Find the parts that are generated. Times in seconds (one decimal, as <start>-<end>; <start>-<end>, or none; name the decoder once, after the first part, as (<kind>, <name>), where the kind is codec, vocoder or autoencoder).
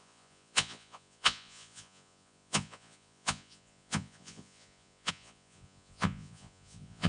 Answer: 0.0-7.1 (vocoder, Vocos)